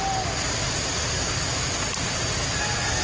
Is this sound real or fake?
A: real